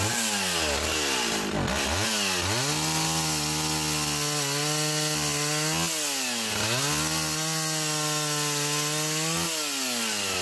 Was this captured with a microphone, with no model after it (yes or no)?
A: yes